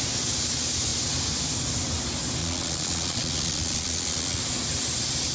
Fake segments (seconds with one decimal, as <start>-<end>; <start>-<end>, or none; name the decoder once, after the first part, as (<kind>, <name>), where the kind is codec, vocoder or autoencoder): 2.4-4.4 (vocoder, Vocos)